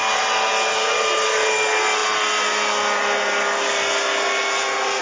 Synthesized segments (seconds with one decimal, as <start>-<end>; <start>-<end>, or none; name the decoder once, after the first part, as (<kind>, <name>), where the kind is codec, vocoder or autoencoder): none